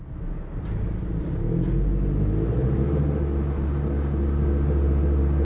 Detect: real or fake real